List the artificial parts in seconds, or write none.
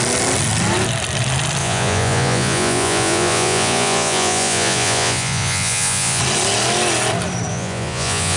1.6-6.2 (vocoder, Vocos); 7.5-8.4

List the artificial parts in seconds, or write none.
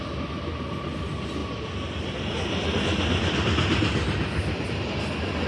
none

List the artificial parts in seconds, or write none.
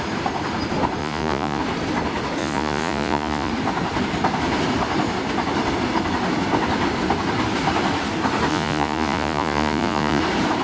1.0-1.6 (vocoder, Vocos); 2.4-3.5; 8.5-10.2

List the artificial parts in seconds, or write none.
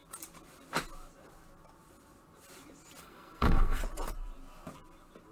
3.0-3.8 (codec, SNAC)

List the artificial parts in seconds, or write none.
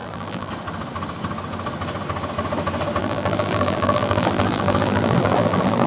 0.0-0.5 (vocoder, BigVGAN v2); 3.0-5.9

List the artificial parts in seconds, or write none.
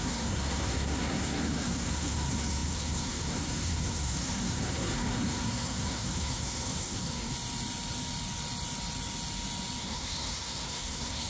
0.0-7.3 (codec, SNAC); 9.8-11.3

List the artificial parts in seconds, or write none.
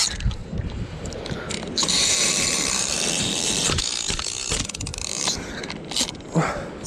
0.4-3.8 (vocoder, BigVGAN v2); 4.9-5.7